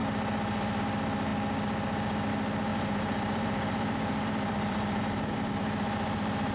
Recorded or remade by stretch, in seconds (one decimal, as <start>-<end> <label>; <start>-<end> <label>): 0.0-2.7 recorded; 2.7-5.0 remade; 5.0-6.5 recorded